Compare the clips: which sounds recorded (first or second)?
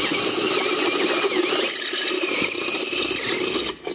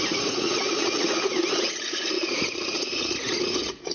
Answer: first